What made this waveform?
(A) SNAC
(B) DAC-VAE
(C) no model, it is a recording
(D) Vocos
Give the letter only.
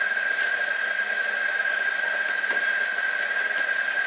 C